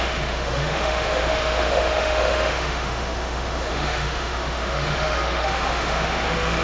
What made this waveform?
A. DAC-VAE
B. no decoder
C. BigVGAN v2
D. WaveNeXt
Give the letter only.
A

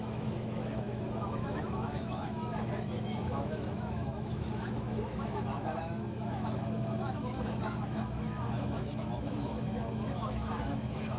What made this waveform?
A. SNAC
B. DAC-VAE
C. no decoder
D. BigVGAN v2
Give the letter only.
B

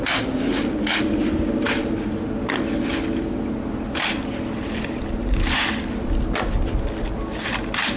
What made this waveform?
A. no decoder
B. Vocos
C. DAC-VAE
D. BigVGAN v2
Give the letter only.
A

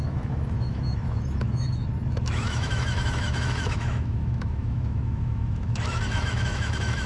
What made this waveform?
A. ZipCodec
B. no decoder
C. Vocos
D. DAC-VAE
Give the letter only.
D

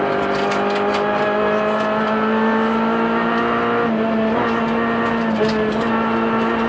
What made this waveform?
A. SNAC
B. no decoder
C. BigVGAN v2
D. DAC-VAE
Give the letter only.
B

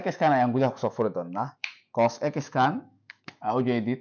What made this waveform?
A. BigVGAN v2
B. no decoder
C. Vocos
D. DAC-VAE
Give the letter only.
D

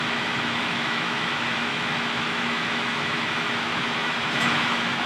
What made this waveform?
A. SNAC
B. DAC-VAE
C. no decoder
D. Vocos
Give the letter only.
B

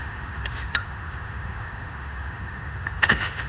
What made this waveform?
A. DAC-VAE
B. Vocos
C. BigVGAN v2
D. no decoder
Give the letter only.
A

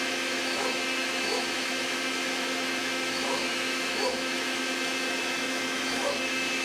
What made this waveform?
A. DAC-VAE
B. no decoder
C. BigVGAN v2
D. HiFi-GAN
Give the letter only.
A